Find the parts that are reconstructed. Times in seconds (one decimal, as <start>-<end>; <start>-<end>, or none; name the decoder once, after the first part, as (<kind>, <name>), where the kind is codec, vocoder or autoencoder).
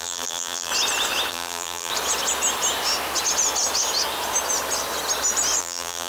0.0-0.7 (vocoder, BigVGAN v2); 1.3-1.9; 5.6-6.1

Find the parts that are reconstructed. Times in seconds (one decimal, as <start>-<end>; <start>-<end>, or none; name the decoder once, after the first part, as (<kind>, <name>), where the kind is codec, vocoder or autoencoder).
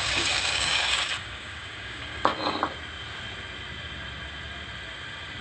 0.0-2.3 (codec, DAC)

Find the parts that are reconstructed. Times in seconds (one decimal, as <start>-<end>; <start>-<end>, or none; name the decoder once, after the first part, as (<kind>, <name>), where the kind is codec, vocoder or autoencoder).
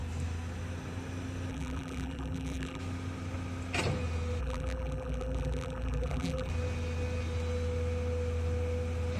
1.5-2.8 (vocoder, BigVGAN v2); 4.4-6.5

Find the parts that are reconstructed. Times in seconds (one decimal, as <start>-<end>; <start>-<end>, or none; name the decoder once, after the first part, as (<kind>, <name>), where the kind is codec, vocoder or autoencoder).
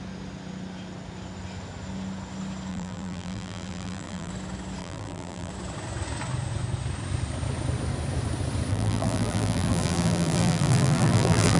2.7-4.3 (vocoder, BigVGAN v2); 4.8-5.5; 8.7-11.6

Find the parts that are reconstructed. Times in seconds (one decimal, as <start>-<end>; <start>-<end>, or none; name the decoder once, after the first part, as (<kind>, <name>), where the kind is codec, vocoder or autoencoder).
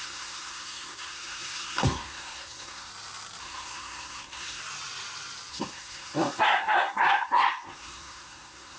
0.0-2.9 (codec, SNAC); 3.4-4.6; 5.5-8.8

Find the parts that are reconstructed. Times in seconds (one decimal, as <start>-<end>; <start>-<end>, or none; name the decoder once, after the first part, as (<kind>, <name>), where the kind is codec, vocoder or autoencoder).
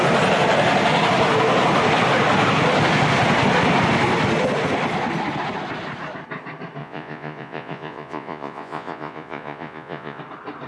6.8-10.2 (vocoder, Vocos)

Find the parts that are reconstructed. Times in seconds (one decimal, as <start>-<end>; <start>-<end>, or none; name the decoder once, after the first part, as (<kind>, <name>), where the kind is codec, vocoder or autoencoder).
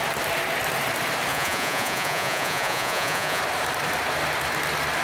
1.3-3.4 (vocoder, Vocos)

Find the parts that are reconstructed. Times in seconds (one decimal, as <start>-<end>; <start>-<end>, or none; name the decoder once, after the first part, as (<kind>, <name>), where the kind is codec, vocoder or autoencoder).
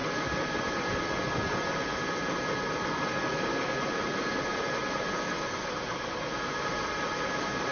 none